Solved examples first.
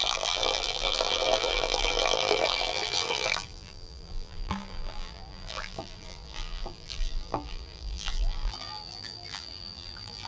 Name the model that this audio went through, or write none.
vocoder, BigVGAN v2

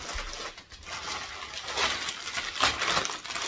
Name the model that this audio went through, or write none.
none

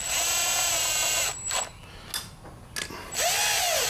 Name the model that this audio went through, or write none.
none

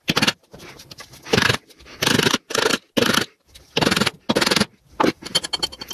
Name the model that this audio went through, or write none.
none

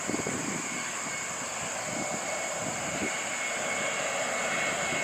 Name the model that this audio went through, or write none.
none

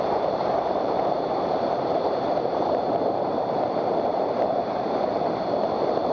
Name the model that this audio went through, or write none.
vocoder, BigVGAN v2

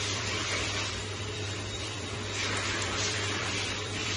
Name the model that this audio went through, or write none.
vocoder, BigVGAN v2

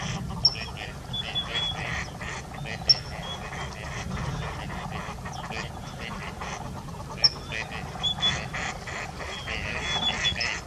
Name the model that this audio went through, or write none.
none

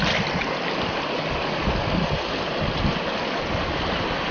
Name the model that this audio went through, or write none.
none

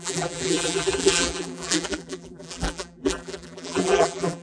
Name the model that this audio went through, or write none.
vocoder, BigVGAN v2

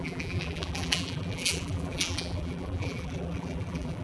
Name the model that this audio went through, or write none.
vocoder, BigVGAN v2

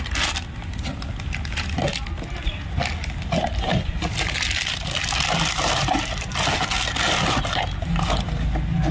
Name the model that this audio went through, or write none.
none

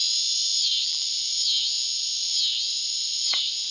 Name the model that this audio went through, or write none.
vocoder, BigVGAN v2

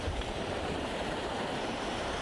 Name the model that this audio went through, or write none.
vocoder, BigVGAN v2